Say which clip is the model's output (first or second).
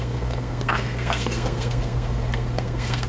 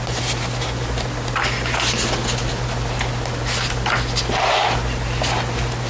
first